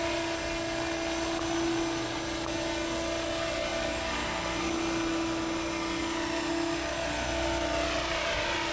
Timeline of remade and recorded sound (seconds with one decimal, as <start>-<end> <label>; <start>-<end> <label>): 0.0-8.7 recorded